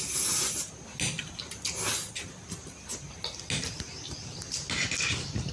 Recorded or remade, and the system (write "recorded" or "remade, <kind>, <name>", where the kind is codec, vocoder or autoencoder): recorded